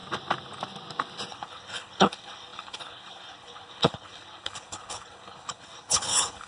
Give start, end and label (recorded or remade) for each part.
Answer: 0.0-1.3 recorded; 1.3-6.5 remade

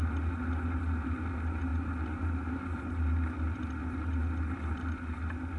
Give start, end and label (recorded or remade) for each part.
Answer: 0.0-5.6 recorded

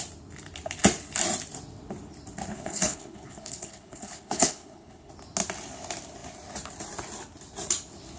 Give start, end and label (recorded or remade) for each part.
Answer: 0.0-2.5 recorded; 2.5-5.1 remade; 5.1-8.2 recorded

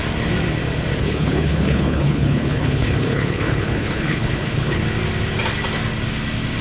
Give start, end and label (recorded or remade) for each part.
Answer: 0.0-1.0 recorded; 1.0-4.8 remade; 4.8-6.6 recorded

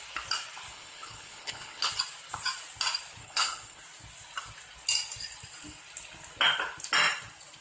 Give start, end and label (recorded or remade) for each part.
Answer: 0.0-0.7 recorded; 0.7-1.9 remade; 1.9-3.2 recorded; 3.2-3.8 remade; 3.8-7.6 recorded

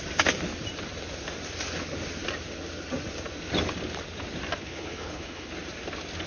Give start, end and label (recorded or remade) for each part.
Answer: 0.0-4.6 recorded; 4.6-5.5 remade; 5.5-6.3 recorded

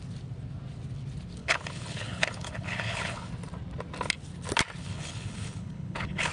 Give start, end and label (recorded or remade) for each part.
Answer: 0.0-1.4 recorded; 1.4-3.3 remade; 3.3-4.8 recorded; 4.8-6.3 remade